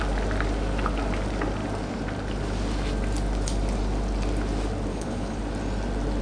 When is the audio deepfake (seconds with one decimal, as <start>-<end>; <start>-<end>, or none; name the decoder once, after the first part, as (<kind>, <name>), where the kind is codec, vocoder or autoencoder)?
4.9-5.4 (codec, HILCodec)